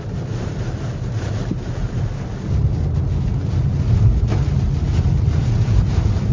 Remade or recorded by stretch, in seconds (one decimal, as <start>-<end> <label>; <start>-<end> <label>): 0.0-1.8 remade; 1.8-4.8 recorded; 4.8-6.3 remade